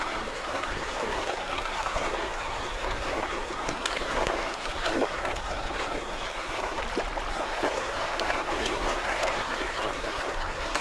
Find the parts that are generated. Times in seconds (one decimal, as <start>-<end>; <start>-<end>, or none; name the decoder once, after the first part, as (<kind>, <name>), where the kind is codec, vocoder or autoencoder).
0.0-6.8 (codec, SNAC); 7.3-10.8